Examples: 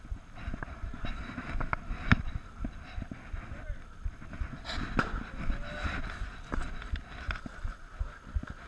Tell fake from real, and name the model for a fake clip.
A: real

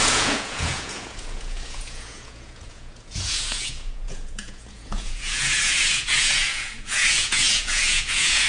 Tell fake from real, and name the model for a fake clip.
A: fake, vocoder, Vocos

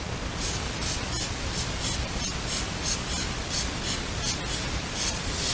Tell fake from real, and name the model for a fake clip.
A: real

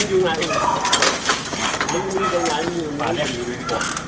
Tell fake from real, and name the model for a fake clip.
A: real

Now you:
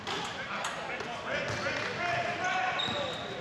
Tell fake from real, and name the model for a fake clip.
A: real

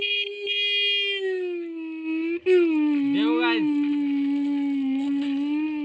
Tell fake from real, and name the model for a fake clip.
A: real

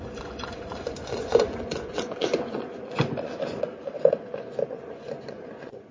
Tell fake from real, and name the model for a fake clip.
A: fake, vocoder, Vocos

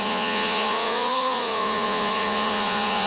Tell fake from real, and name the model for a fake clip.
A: fake, vocoder, Vocos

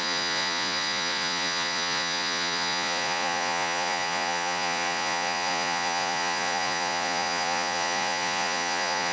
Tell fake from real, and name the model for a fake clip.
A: fake, vocoder, Vocos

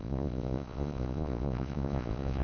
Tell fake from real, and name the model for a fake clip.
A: fake, vocoder, Vocos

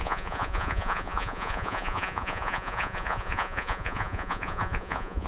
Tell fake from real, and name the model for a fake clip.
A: fake, vocoder, Vocos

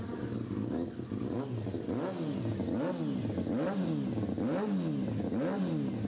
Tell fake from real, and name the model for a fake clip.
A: real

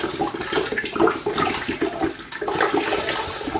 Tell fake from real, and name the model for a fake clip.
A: real